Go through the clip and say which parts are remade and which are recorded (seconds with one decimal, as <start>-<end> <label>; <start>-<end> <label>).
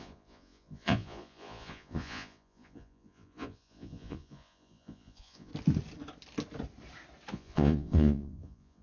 0.0-5.5 remade; 5.5-7.3 recorded; 7.3-8.8 remade